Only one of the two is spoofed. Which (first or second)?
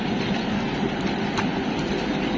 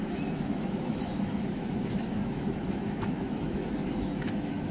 second